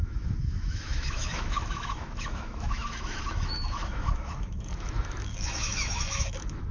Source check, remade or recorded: remade